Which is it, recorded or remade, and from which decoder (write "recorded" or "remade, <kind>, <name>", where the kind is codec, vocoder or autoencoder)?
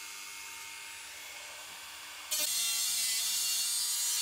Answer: recorded